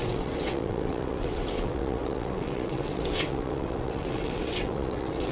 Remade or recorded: remade